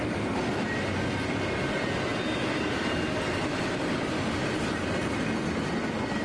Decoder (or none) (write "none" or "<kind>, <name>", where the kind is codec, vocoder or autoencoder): none